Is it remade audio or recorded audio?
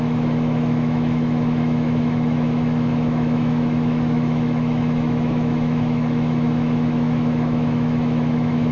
remade